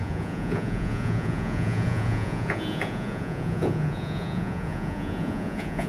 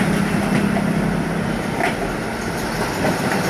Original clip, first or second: second